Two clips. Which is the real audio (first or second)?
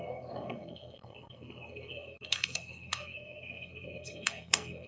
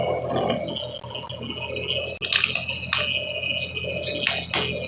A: second